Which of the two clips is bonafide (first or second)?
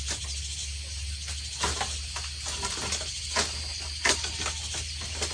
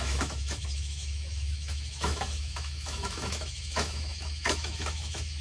first